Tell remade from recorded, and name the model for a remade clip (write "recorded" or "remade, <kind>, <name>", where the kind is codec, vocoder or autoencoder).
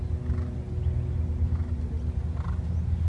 recorded